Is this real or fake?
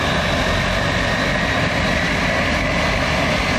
real